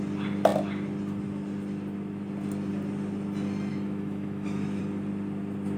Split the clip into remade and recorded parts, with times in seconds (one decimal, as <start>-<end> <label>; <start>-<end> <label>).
0.0-3.7 recorded; 3.7-4.8 remade; 4.8-5.8 recorded